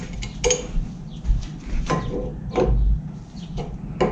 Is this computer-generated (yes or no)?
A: no